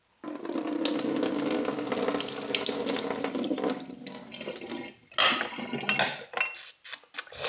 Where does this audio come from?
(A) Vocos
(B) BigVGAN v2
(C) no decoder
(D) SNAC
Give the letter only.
C